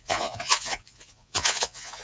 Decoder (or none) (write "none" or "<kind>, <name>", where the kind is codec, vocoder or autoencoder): vocoder, Vocos